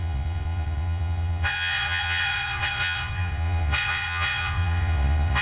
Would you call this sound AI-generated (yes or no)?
yes